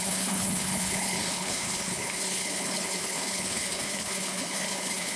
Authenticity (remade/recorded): remade